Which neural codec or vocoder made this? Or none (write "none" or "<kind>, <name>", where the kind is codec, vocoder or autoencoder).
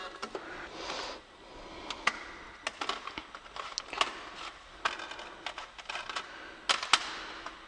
none